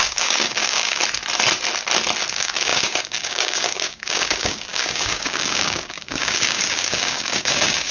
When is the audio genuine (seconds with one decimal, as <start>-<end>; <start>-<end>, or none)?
1.0-2.3